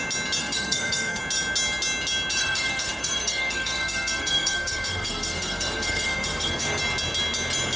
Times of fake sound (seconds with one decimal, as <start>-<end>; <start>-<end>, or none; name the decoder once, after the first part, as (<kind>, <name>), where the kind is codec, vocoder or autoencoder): 0.4-1.2 (codec, SNAC); 2.4-6.8